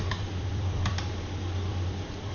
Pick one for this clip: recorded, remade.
remade